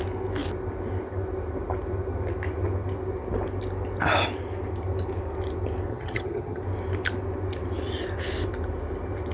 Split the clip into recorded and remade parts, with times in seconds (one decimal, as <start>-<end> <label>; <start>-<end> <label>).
0.0-5.9 recorded; 5.9-6.6 remade; 6.6-9.3 recorded